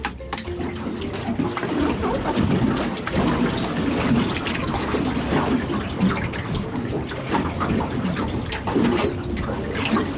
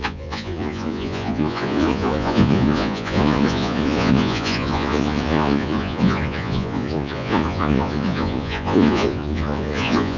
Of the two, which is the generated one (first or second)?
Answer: second